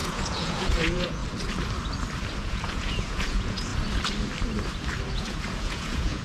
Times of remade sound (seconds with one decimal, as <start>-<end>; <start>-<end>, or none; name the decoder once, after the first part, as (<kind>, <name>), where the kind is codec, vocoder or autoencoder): 0.0-1.2 (vocoder, Vocos); 2.4-3.7; 5.1-6.2